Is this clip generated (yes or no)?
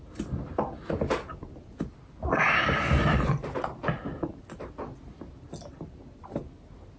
no